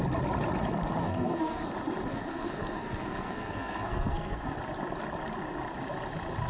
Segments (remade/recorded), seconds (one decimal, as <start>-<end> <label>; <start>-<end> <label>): 0.0-1.0 recorded; 1.0-1.7 remade; 1.7-2.1 recorded; 2.1-4.5 remade; 4.5-6.5 recorded